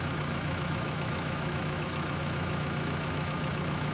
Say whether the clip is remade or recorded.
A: remade